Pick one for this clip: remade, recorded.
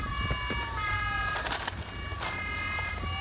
recorded